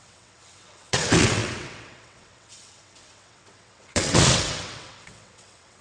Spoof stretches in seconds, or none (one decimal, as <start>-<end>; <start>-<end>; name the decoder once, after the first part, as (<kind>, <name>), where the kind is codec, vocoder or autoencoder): 0.0-5.8 (vocoder, WaveNeXt)